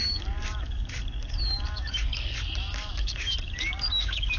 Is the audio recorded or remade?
remade